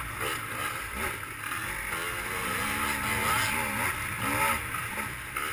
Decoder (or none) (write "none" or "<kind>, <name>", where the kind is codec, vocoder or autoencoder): none